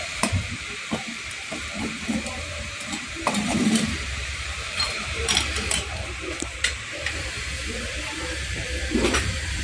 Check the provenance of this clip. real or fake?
fake